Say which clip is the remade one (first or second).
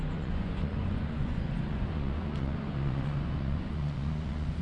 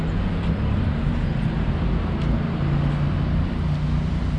first